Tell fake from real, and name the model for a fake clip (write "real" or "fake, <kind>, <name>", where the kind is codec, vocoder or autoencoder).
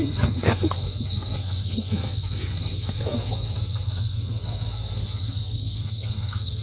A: fake, codec, SNAC